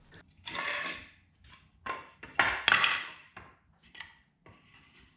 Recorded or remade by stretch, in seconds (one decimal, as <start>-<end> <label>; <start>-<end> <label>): 0.0-5.2 recorded